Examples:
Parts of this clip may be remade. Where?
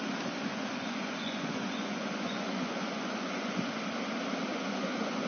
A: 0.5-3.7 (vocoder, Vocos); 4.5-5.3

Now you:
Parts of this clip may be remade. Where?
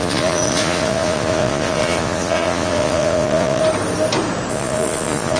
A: 0.0-3.6 (vocoder, Vocos); 4.5-5.4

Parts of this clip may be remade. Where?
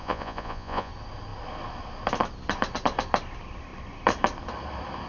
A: 0.0-0.9 (vocoder, Vocos)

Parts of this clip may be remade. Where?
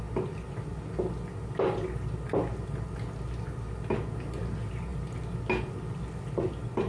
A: none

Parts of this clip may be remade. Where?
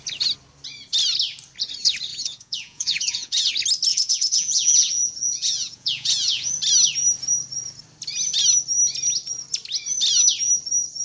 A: 2.1-3.5 (vocoder, Vocos); 3.9-6.5